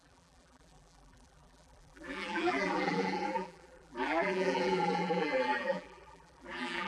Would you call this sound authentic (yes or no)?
no